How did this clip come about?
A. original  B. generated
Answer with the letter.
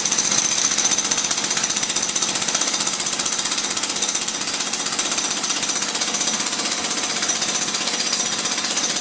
A